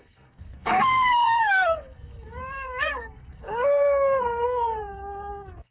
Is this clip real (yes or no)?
no